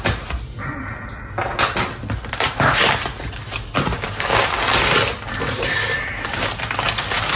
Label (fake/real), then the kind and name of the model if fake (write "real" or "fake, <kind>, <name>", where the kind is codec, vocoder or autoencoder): real